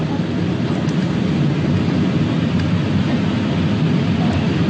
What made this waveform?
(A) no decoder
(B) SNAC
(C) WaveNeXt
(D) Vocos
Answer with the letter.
A